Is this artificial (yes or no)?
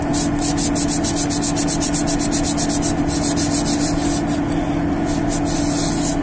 no